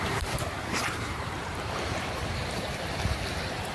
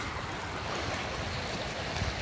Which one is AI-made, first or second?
first